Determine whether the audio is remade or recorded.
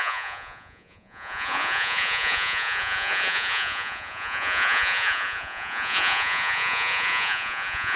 remade